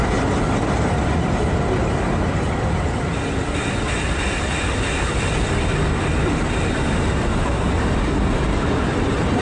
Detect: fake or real real